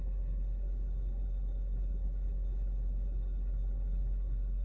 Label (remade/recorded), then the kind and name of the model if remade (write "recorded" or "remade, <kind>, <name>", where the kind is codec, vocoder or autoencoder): remade, codec, HILCodec